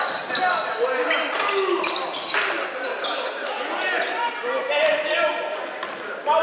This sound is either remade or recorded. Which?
recorded